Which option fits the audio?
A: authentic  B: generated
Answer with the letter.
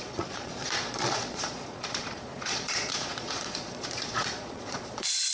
B